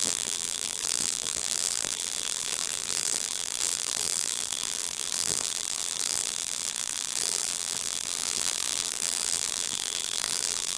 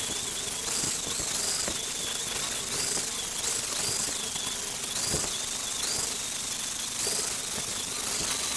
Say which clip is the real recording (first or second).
second